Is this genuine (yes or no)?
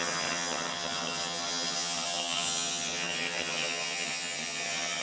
no